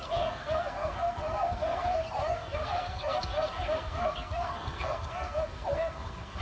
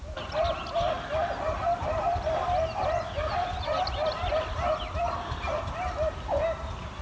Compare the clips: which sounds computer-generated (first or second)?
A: first